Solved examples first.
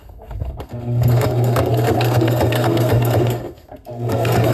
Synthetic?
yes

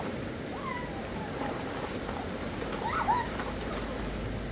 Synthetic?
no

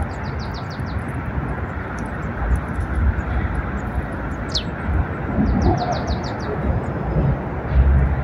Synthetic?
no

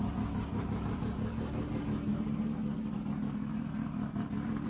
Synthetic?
yes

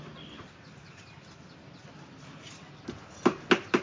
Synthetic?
no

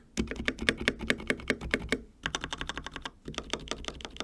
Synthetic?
no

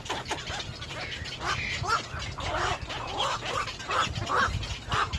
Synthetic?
no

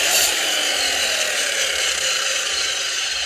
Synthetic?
yes